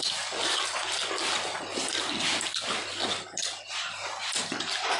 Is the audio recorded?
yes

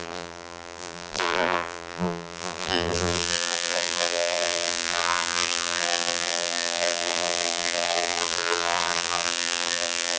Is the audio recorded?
no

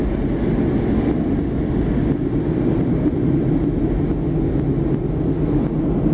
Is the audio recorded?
yes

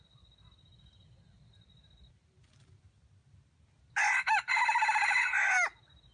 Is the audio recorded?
yes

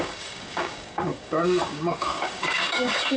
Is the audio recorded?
no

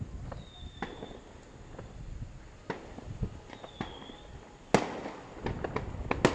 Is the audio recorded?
yes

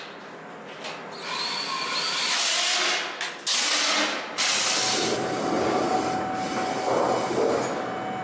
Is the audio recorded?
yes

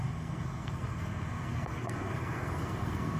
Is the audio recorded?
no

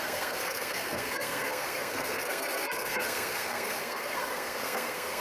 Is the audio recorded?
no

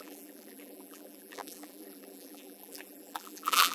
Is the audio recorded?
no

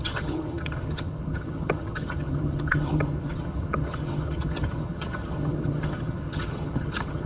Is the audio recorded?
no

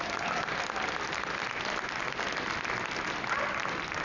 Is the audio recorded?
yes